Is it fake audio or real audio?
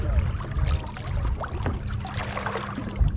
real